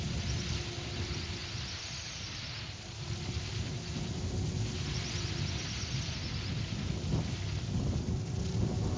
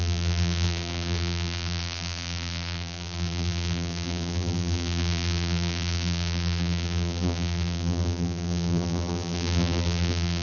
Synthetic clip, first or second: second